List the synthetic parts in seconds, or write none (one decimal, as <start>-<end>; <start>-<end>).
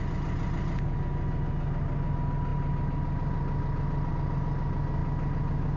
none